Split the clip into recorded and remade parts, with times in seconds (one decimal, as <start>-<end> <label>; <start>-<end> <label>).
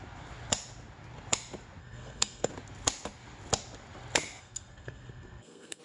0.0-1.8 recorded; 1.8-2.5 remade; 2.5-4.4 recorded; 4.4-5.8 remade